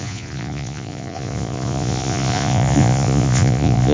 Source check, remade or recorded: remade